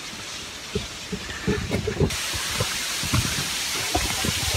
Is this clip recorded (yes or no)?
no